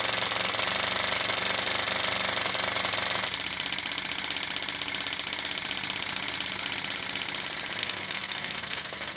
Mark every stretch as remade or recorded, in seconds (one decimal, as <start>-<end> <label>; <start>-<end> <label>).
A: 0.0-7.8 recorded; 7.8-9.2 remade